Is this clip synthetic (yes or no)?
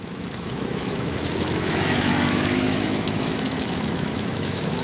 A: yes